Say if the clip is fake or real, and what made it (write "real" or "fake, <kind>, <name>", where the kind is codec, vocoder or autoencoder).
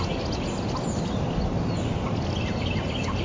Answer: real